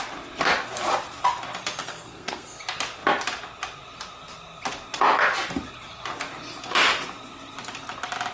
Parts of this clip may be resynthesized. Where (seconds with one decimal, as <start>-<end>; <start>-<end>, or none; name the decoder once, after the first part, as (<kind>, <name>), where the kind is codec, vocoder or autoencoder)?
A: 1.8-2.6 (codec, SNAC)